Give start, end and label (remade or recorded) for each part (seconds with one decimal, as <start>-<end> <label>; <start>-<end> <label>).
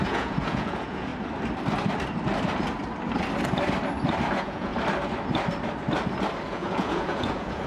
0.0-1.1 remade; 1.1-4.3 recorded; 4.3-4.7 remade; 4.7-6.4 recorded; 6.4-7.7 remade